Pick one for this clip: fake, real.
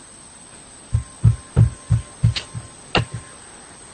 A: real